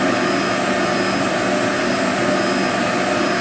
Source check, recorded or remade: recorded